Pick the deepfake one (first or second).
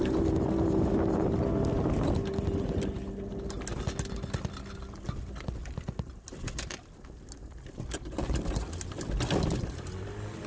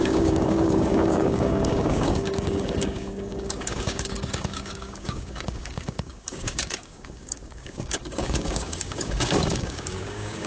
second